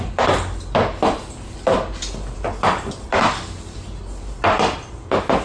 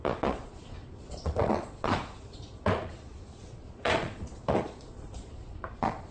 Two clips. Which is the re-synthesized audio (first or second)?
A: second